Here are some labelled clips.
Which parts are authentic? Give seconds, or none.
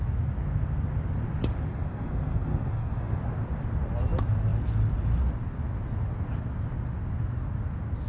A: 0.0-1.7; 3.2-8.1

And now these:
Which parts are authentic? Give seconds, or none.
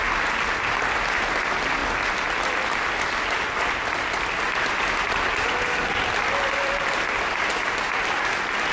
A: 0.0-8.7